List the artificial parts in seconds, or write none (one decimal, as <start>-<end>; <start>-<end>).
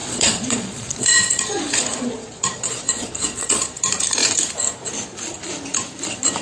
0.0-3.8